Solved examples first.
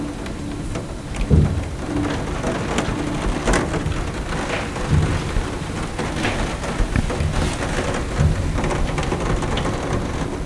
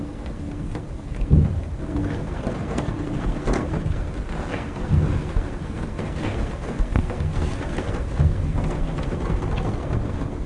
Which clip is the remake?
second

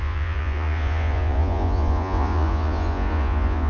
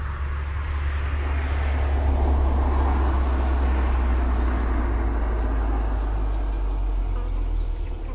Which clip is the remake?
first